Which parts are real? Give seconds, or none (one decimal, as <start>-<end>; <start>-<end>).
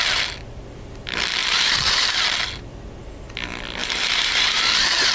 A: 0.0-1.4; 2.2-3.8